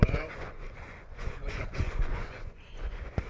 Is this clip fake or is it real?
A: fake